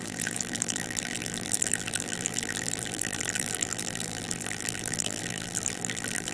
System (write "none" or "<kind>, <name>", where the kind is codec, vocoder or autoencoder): vocoder, BigVGAN v2